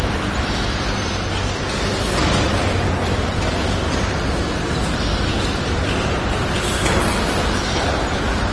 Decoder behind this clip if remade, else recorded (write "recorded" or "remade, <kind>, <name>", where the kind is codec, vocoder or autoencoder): recorded